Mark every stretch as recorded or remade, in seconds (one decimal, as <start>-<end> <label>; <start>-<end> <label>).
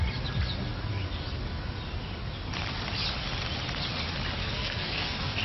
0.0-4.4 recorded; 4.4-5.4 remade